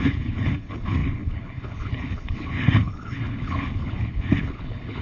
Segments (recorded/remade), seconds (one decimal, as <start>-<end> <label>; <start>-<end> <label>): 0.0-5.0 remade